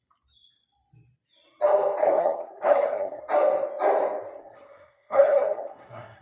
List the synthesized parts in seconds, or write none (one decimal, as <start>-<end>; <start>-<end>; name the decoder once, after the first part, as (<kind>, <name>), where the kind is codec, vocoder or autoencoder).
2.0-3.2 (codec, SNAC); 4.4-6.2